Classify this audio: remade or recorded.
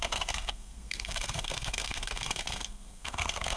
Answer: remade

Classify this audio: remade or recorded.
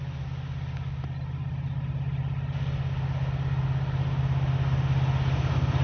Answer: recorded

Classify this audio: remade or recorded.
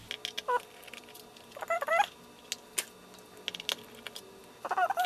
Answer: recorded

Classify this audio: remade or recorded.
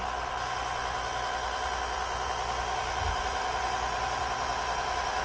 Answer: recorded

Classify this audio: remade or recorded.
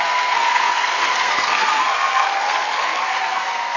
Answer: remade